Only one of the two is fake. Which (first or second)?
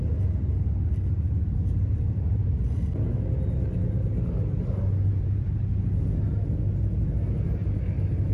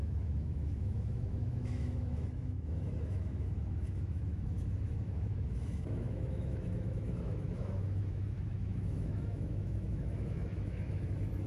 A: second